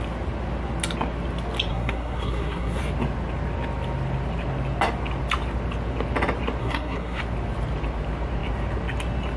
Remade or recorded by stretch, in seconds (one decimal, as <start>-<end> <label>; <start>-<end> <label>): 0.0-1.7 recorded; 1.7-2.8 remade; 2.8-6.6 recorded; 6.6-7.2 remade; 7.2-9.4 recorded